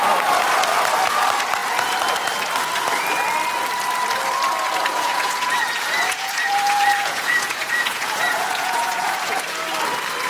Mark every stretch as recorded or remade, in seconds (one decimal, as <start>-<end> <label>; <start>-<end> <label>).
0.0-4.9 recorded; 4.9-9.7 remade; 9.7-10.3 recorded